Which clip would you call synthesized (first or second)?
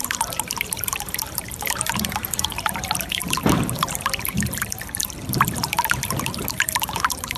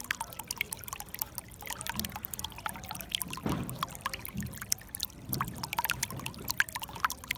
first